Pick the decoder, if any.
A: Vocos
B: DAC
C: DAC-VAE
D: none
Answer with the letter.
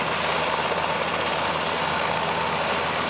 D